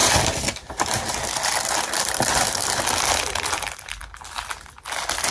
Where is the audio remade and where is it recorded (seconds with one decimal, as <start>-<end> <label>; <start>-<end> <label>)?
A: 0.0-1.7 recorded; 1.7-2.6 remade; 2.6-3.4 recorded; 3.4-4.0 remade; 4.0-5.3 recorded